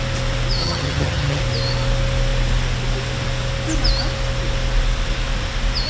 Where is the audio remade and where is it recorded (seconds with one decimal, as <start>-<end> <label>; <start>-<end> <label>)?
0.0-0.6 recorded; 0.6-1.4 remade; 1.4-5.9 recorded